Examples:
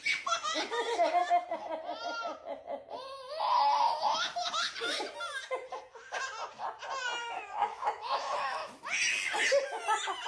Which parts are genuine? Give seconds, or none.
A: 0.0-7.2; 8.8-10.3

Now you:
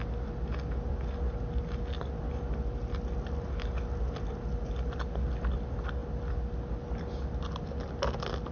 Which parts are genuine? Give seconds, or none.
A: 0.0-8.5